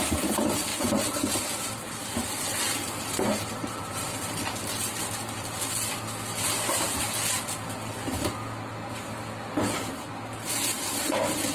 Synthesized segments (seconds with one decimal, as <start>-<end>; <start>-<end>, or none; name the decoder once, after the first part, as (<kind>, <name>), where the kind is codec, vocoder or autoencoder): 0.0-4.8 (vocoder, BigVGAN v2); 9.6-11.5